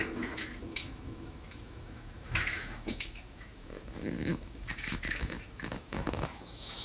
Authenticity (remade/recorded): remade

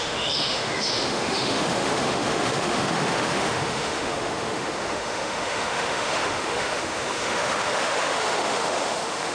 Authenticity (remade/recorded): remade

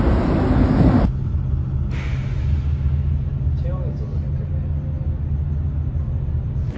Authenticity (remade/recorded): recorded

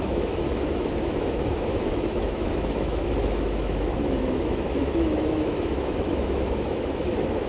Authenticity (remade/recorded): remade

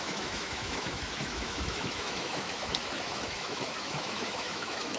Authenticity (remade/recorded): remade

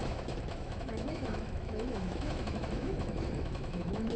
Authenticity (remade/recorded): remade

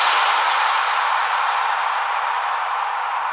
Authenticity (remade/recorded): recorded